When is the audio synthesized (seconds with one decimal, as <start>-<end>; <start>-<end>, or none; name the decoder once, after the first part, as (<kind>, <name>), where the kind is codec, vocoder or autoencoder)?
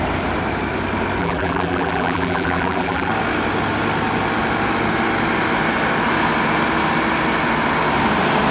1.2-3.1 (vocoder, BigVGAN v2)